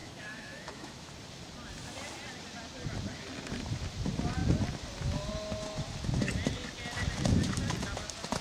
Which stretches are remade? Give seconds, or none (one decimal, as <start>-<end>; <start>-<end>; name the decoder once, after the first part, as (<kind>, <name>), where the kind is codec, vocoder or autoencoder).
0.0-1.1 (autoencoder, DAC-VAE)